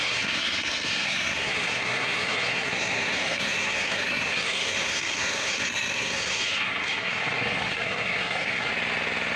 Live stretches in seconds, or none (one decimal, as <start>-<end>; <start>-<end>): 8.7-9.4